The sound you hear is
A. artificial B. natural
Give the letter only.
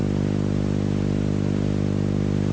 B